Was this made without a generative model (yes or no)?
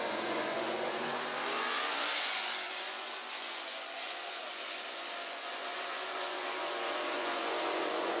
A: no